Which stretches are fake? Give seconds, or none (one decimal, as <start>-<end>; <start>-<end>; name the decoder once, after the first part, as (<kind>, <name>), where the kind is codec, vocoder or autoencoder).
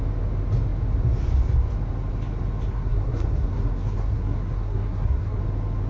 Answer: 2.7-5.4 (codec, SNAC)